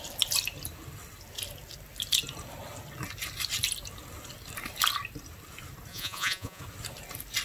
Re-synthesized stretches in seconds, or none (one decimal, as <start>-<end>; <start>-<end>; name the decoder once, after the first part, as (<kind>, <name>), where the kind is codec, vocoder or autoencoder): 5.9-6.6 (vocoder, Vocos)